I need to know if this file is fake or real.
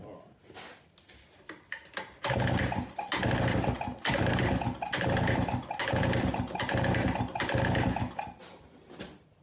real